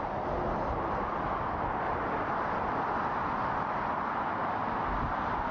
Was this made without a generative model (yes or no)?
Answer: yes